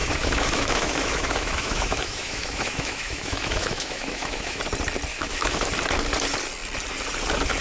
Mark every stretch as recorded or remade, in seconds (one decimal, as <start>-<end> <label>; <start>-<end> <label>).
0.0-4.6 remade; 4.6-5.1 recorded; 5.1-5.7 remade; 5.7-7.6 recorded